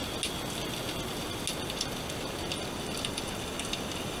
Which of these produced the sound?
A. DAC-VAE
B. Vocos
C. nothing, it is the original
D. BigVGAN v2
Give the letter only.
C